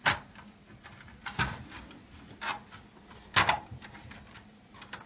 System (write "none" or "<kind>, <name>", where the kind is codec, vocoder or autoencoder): none